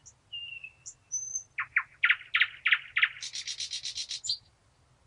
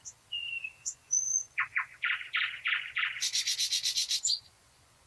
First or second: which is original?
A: first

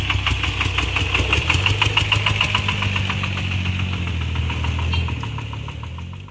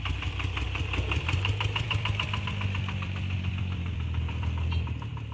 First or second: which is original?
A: first